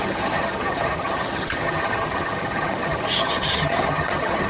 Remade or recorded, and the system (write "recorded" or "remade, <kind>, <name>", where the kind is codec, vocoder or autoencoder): remade, vocoder, HiFi-GAN